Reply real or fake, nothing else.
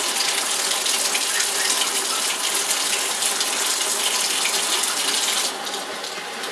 real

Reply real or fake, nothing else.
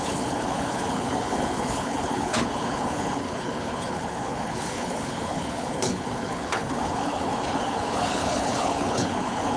fake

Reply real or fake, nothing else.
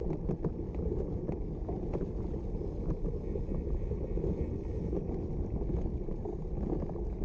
real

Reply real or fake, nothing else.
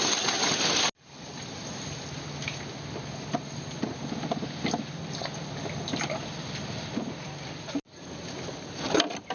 real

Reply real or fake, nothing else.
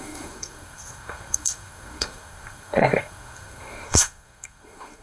fake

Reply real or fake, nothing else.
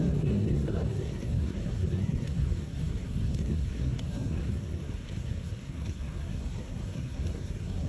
fake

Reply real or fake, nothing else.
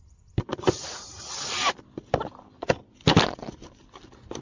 real